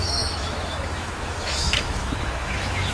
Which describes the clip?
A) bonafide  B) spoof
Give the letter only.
B